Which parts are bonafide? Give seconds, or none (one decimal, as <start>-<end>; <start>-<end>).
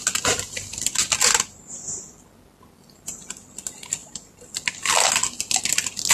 0.0-6.1